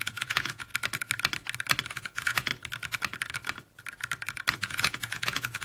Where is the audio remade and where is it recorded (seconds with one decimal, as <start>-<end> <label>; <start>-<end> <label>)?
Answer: 0.0-0.7 remade; 0.7-1.9 recorded; 1.9-2.5 remade; 2.5-4.5 recorded; 4.5-5.6 remade